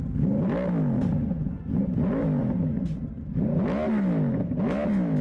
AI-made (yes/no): no